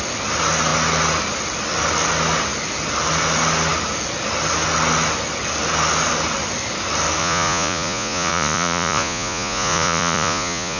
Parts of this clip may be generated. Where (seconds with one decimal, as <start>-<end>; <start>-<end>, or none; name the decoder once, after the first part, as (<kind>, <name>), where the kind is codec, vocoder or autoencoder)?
7.2-10.8 (vocoder, Vocos)